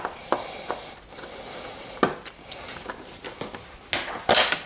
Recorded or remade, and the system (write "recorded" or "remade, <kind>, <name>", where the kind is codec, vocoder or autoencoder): recorded